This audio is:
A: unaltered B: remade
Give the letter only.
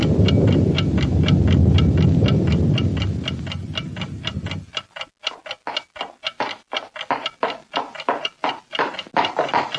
A